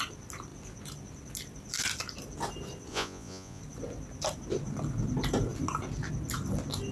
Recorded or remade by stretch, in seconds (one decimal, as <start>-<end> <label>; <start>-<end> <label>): 0.0-2.9 recorded; 2.9-3.6 remade; 3.6-6.9 recorded